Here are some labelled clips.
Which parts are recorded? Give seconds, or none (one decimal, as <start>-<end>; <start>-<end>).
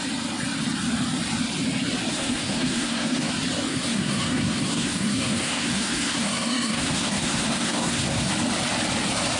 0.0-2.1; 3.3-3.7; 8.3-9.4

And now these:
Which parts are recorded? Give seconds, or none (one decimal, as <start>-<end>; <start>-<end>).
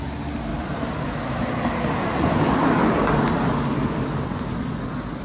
0.0-5.2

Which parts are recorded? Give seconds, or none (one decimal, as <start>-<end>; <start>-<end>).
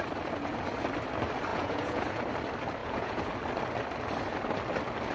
0.0-1.5; 2.2-2.8; 3.3-5.1